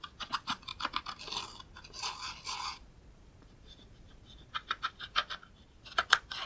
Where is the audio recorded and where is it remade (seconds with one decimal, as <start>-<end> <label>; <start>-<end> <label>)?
0.0-0.7 remade; 0.7-2.5 recorded; 2.5-5.2 remade; 5.2-5.8 recorded; 5.8-6.5 remade